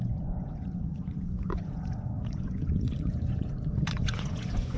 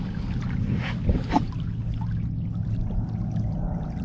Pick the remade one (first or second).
first